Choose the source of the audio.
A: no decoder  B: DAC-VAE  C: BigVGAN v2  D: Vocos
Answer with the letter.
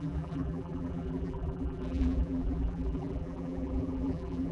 C